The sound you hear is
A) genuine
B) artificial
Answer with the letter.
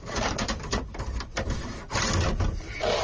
A